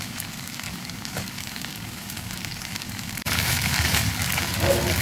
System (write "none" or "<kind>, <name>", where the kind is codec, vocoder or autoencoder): codec, DAC